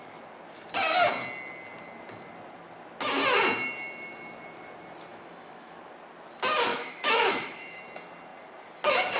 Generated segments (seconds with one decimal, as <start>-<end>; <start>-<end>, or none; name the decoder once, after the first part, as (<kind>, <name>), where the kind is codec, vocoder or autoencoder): 5.1-5.8 (autoencoder, DAC-VAE); 6.7-7.8